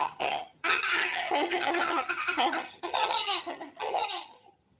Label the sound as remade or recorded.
remade